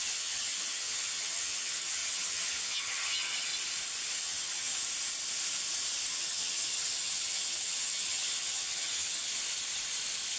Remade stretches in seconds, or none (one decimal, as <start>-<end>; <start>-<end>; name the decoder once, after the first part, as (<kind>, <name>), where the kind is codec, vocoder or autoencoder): 0.0-3.5 (vocoder, HiFi-GAN); 4.2-4.7; 6.1-9.3